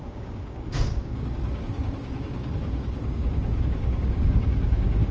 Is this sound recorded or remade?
remade